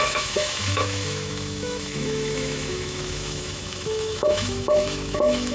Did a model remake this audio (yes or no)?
yes